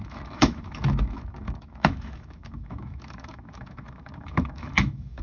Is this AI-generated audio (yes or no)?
yes